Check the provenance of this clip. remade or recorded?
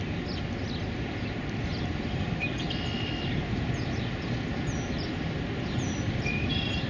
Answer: recorded